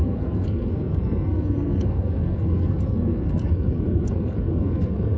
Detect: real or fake fake